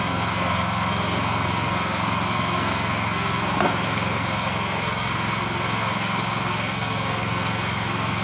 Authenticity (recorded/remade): remade